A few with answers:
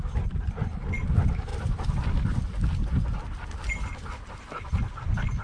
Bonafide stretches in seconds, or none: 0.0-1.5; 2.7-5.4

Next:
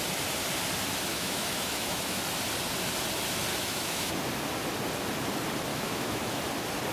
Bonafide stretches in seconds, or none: 0.0-1.1; 2.2-3.5; 4.1-5.7; 6.4-6.9

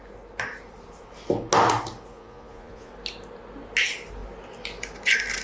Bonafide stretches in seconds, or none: 0.0-2.1; 2.9-5.4

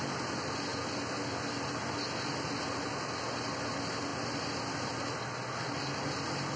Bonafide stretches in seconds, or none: 0.0-6.6